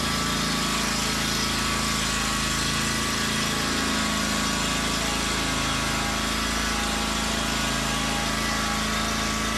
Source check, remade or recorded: recorded